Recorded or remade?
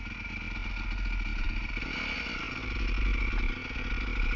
recorded